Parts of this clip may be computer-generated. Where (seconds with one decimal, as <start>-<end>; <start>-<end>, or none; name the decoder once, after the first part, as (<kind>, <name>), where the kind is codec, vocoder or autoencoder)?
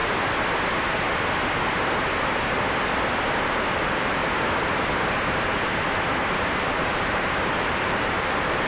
3.4-4.2 (vocoder, BigVGAN v2); 6.6-8.7